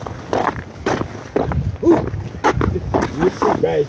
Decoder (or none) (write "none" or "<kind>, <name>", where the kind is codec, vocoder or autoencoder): none